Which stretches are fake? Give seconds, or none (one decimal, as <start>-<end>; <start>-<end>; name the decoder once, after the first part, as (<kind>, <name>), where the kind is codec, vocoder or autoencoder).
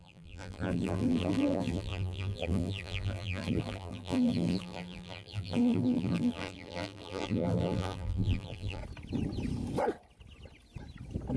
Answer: 0.0-8.8 (vocoder, BigVGAN v2)